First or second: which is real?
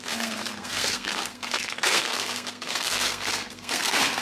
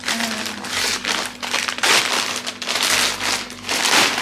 second